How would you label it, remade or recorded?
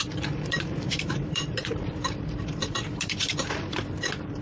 remade